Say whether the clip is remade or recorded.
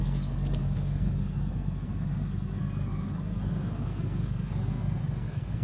remade